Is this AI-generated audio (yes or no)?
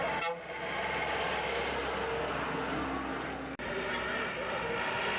no